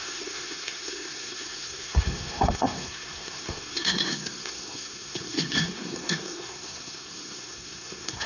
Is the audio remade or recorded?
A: remade